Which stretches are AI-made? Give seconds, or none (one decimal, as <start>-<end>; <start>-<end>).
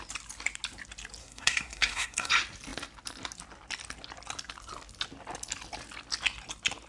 1.2-2.3